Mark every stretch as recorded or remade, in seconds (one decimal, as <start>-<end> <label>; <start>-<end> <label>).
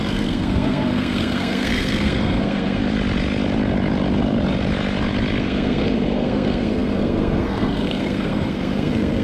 0.0-2.8 remade; 2.8-5.4 recorded; 5.4-9.2 remade